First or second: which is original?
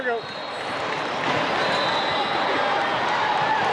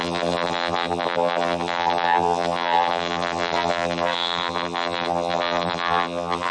first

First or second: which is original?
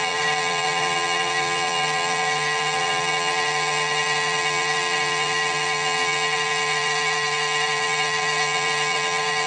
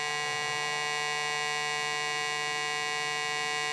second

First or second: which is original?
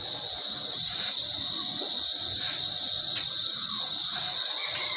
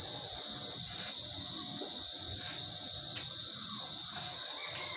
second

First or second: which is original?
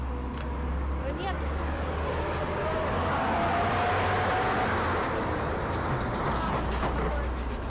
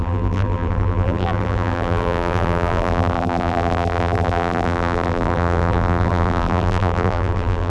first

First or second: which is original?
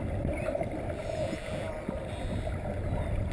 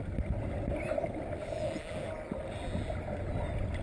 second